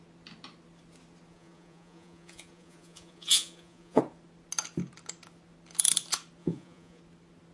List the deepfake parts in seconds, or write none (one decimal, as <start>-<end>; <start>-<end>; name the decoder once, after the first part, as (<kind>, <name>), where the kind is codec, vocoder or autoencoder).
1.3-4.0 (vocoder, Vocos); 6.4-7.0